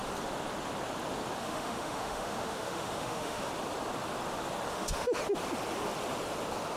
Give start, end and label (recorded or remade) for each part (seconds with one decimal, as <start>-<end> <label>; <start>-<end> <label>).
0.0-1.4 recorded; 1.4-3.5 remade; 3.5-4.7 recorded; 4.7-5.2 remade; 5.2-6.8 recorded